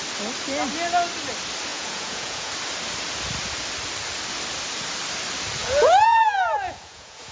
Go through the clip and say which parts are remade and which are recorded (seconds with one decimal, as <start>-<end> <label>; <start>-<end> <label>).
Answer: 0.0-1.7 recorded; 1.7-2.5 remade; 2.5-5.6 recorded; 5.6-7.3 remade